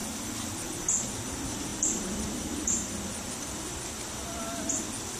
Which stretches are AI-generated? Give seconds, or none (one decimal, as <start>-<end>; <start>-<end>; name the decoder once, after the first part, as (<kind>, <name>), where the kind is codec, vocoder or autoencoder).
none